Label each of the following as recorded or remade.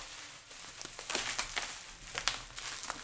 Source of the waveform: recorded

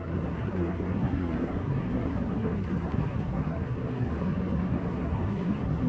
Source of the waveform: remade